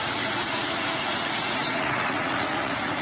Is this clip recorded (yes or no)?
no